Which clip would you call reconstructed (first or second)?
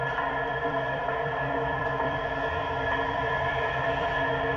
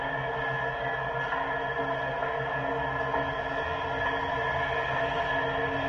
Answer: first